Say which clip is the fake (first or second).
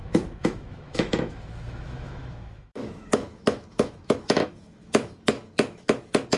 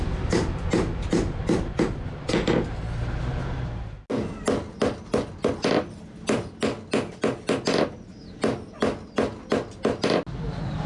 first